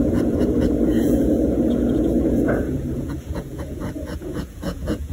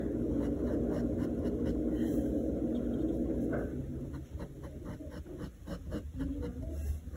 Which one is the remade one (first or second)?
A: first